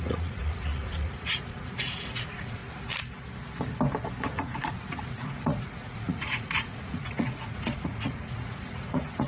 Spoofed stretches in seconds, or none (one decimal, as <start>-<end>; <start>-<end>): 0.0-2.6; 4.3-9.3